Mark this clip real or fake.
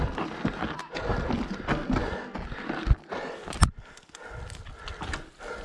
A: real